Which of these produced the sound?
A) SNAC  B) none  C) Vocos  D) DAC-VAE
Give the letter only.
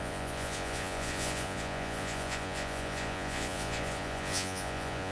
C